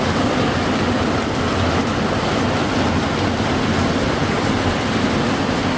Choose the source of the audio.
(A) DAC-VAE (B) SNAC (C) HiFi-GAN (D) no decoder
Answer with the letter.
D